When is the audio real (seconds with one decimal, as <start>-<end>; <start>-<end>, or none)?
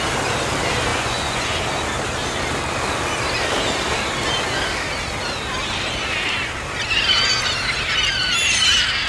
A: 0.0-0.9; 1.6-9.1